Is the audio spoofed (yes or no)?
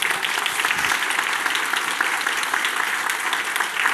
no